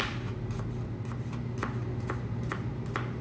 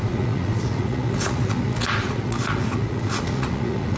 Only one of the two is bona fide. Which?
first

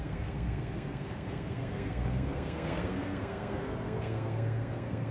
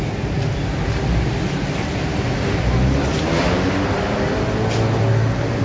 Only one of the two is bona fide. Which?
second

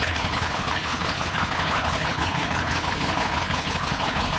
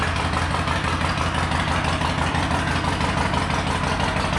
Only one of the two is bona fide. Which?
second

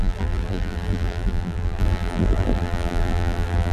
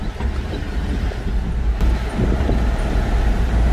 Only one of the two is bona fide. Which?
second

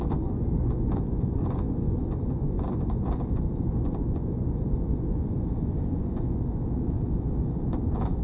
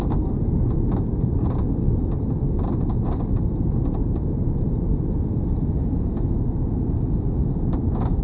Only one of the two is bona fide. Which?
second